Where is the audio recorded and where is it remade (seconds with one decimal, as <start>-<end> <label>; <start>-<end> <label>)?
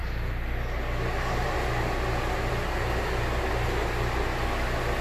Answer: 0.0-5.0 recorded